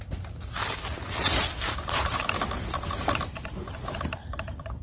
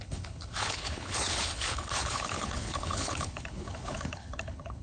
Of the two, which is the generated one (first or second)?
second